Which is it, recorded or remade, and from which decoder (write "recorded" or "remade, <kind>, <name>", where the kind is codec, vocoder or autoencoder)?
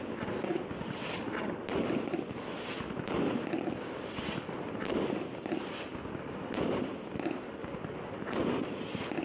recorded